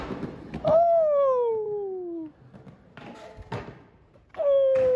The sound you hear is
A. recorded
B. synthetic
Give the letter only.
A